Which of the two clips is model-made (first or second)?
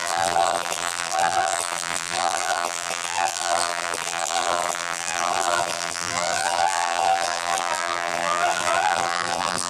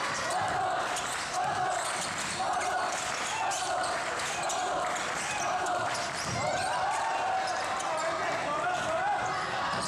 first